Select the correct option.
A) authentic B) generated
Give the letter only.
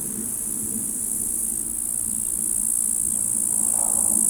A